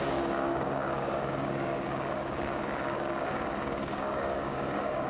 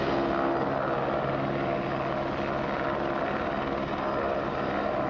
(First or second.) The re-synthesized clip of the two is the first